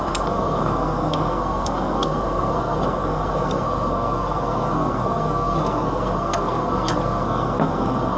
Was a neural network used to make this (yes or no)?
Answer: yes